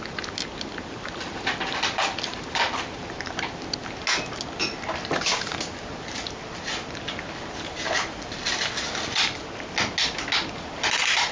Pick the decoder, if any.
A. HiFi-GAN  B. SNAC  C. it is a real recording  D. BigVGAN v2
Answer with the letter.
C